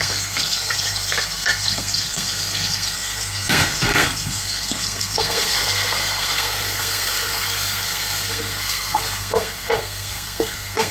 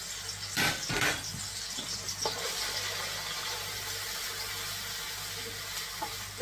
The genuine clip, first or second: second